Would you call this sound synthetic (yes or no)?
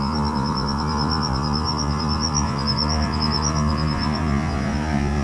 yes